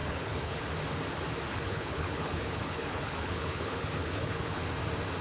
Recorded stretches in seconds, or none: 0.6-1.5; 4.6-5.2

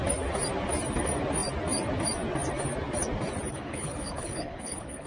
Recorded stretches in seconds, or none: 0.0-3.5

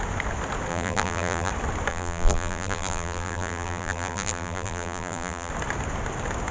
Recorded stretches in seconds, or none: 0.0-0.7; 1.5-1.9; 5.5-6.5

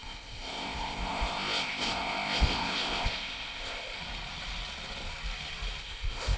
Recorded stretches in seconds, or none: 4.0-5.8